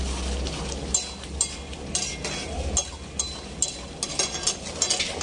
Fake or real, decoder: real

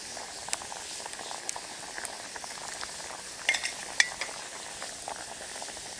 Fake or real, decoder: real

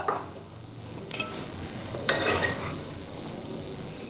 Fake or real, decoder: fake, codec, DAC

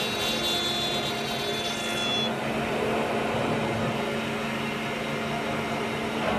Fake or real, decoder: real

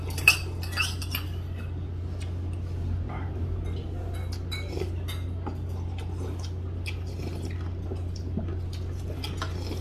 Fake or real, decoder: real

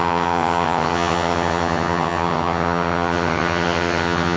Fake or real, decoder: fake, vocoder, HiFi-GAN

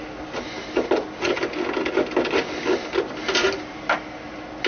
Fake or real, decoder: real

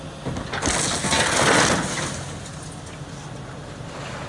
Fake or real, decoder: real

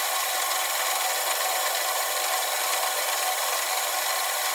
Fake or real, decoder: fake, vocoder, BigVGAN v2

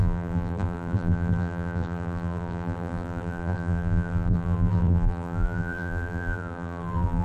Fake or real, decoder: fake, vocoder, BigVGAN v2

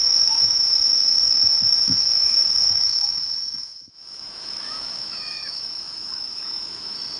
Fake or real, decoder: fake, autoencoder, DAC-VAE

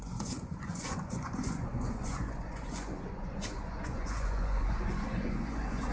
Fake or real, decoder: fake, vocoder, Vocos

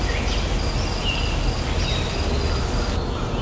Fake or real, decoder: real